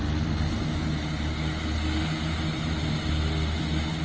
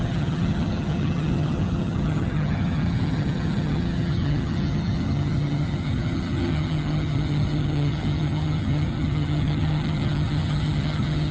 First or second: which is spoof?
second